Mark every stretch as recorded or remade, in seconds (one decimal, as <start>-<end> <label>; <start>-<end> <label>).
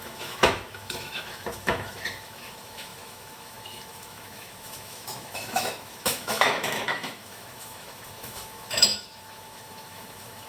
0.0-10.5 remade